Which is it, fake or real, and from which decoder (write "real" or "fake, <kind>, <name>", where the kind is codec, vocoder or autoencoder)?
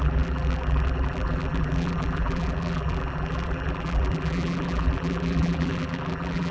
fake, vocoder, BigVGAN v2